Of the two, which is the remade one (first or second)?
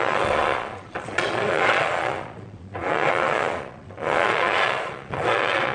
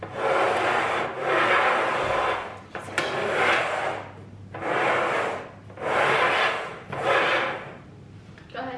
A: first